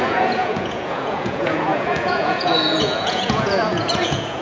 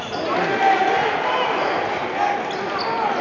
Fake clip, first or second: first